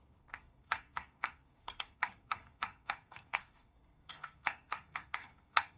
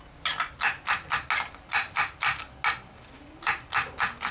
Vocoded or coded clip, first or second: first